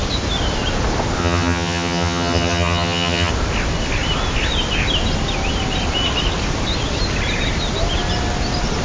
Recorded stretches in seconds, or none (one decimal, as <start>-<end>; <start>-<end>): 0.0-1.2; 3.3-8.8